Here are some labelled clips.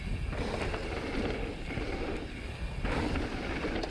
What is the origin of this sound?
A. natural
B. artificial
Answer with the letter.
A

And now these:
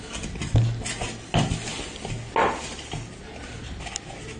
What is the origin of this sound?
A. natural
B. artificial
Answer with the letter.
A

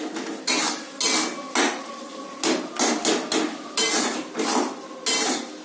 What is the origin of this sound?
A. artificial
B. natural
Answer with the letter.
B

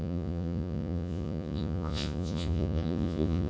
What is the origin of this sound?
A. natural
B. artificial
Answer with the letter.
B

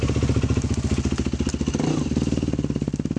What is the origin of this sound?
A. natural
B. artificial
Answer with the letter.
A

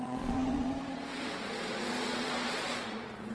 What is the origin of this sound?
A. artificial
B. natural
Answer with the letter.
A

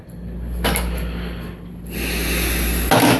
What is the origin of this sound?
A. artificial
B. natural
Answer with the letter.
B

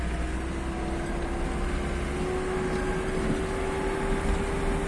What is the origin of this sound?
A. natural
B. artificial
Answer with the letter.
A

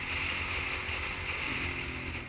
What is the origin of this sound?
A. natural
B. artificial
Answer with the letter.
A